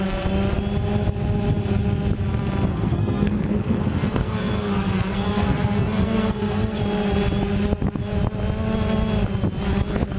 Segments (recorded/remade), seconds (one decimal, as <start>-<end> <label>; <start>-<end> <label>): 0.0-2.7 recorded; 2.7-6.8 remade; 6.8-10.2 recorded